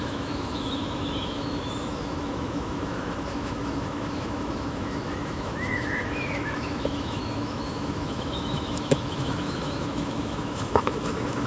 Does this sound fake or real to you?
fake